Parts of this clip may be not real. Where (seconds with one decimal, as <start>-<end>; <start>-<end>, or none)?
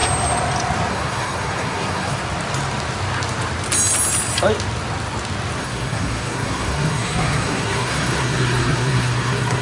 0.9-2.2; 5.6-9.6